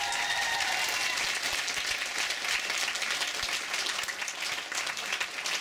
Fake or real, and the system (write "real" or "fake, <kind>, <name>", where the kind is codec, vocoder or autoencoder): real